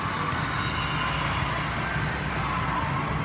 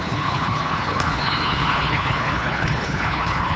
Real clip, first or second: first